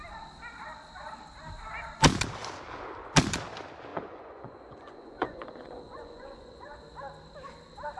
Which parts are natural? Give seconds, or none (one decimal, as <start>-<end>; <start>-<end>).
0.0-3.9; 6.8-8.0